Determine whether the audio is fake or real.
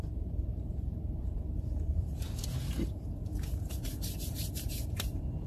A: fake